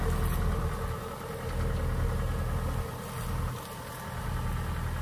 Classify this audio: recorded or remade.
recorded